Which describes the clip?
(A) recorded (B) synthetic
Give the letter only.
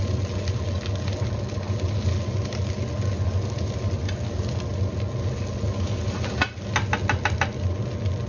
A